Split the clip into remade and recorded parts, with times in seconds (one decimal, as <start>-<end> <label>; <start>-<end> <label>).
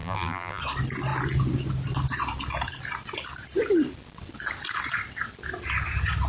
0.0-0.6 remade; 0.6-6.3 recorded